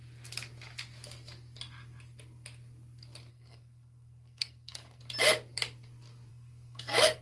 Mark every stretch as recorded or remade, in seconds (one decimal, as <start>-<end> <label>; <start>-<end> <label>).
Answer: 0.0-3.3 recorded; 3.3-5.0 remade; 5.0-6.3 recorded; 6.3-7.2 remade